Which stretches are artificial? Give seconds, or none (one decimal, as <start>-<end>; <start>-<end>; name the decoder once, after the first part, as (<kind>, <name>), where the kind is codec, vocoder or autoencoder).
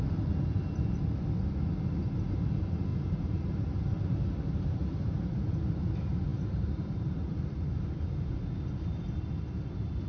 2.9-5.6 (vocoder, BigVGAN v2); 6.3-8.4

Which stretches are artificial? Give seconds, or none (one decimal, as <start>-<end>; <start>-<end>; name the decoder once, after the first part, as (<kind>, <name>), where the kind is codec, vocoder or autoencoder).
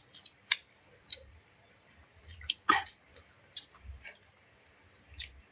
none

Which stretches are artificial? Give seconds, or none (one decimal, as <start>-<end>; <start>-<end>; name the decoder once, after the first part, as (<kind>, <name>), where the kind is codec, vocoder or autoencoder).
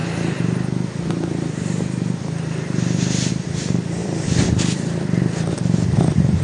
4.0-5.5 (vocoder, BigVGAN v2)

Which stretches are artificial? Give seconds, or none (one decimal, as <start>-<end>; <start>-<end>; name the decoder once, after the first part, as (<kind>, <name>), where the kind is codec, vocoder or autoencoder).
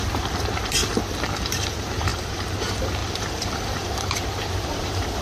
0.0-0.8 (vocoder, BigVGAN v2); 1.4-5.2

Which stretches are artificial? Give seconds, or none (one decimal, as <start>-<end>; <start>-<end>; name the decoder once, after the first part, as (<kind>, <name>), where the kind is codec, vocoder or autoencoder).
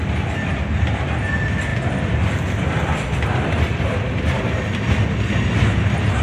1.7-4.7 (vocoder, BigVGAN v2)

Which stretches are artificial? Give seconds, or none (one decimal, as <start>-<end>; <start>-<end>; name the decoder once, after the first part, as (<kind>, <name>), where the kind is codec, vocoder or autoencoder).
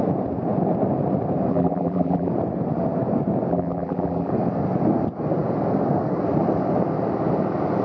1.5-2.3 (vocoder, BigVGAN v2); 3.5-4.3